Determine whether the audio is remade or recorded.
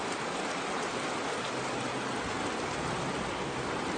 recorded